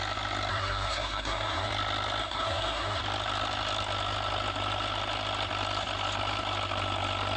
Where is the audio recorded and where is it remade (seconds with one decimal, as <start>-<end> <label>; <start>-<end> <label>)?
0.0-0.5 recorded; 0.5-1.7 remade; 1.7-2.2 recorded; 2.2-3.0 remade; 3.0-7.4 recorded